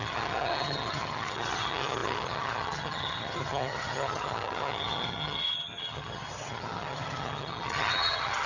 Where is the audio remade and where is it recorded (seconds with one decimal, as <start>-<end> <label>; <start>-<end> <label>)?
0.0-8.5 remade